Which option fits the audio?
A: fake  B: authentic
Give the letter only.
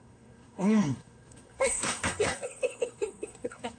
A